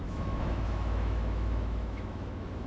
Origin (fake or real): fake